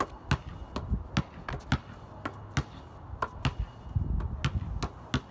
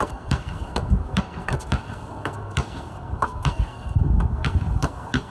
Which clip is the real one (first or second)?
first